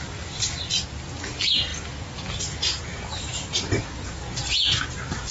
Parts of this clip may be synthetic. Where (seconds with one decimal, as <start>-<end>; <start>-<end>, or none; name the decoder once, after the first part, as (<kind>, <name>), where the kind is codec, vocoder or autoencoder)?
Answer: none